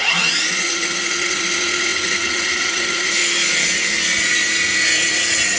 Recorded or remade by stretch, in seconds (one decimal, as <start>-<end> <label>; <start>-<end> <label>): 0.0-3.2 remade; 3.2-4.2 recorded; 4.2-5.6 remade

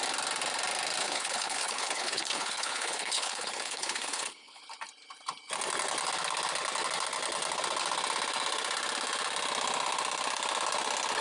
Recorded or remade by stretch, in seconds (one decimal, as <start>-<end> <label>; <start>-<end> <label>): 0.0-1.0 recorded; 1.0-4.6 remade; 4.6-11.2 recorded

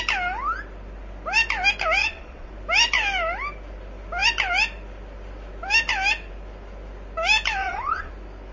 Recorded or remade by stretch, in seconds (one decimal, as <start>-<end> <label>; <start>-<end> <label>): 0.0-2.0 recorded; 2.0-2.5 remade; 2.5-7.6 recorded; 7.6-8.1 remade; 8.1-8.5 recorded